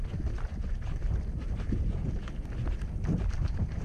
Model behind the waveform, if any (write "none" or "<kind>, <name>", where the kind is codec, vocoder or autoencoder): none